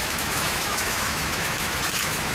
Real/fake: fake